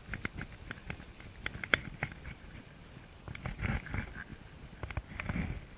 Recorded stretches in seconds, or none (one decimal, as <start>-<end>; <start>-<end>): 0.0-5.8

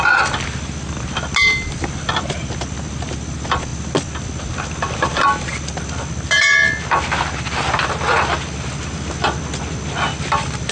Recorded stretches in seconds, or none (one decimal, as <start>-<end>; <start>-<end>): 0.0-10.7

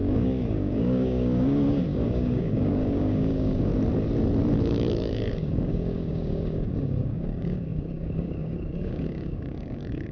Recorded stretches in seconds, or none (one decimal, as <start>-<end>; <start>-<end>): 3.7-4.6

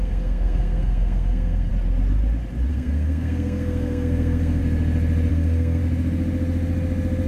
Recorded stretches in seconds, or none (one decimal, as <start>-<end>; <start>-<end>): 1.7-2.7; 4.6-5.3; 5.8-7.3